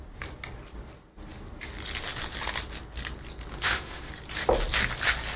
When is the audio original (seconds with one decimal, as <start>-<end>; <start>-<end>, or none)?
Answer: 0.0-3.5; 4.1-5.4